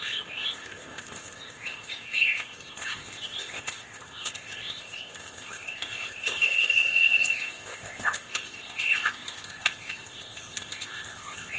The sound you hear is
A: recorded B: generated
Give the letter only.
B